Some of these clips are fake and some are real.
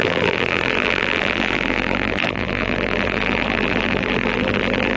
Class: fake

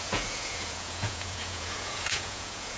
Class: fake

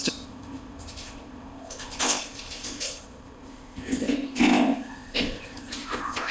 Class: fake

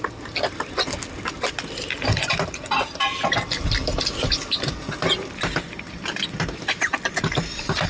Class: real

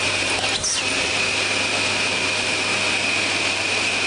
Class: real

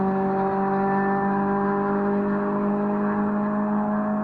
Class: real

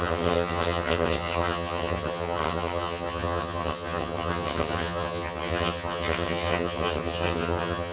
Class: fake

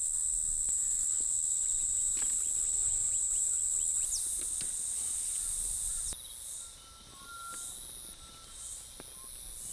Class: real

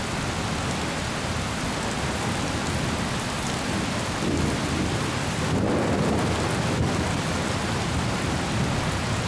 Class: real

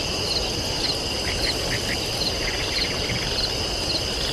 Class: real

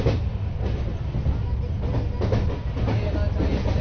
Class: real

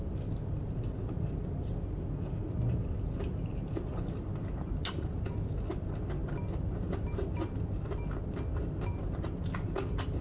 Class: real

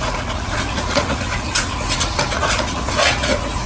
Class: fake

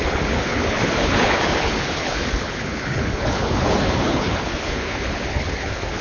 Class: fake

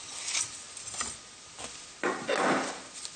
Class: real